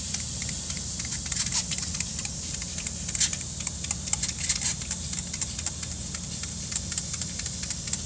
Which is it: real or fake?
real